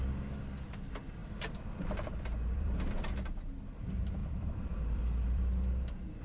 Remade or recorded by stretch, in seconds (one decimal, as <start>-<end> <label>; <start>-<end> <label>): 0.0-1.2 recorded; 1.2-2.7 remade; 2.7-4.2 recorded; 4.2-5.5 remade; 5.5-6.2 recorded